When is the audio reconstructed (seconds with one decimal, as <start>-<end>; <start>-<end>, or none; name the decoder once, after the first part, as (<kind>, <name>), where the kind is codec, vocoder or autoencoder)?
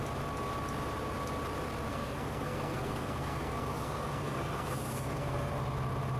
1.9-5.5 (codec, SNAC)